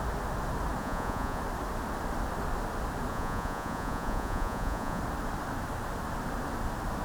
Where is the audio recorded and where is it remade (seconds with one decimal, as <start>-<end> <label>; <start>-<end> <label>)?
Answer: 0.0-0.8 recorded; 0.8-1.4 remade; 1.4-3.1 recorded; 3.1-5.0 remade; 5.0-7.0 recorded